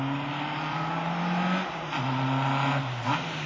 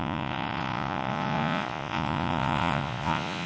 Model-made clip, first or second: second